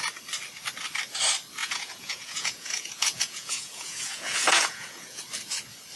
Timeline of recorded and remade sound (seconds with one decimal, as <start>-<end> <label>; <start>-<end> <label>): 0.0-1.6 recorded; 1.6-5.2 remade; 5.2-6.0 recorded